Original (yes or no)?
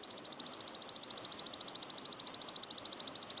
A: yes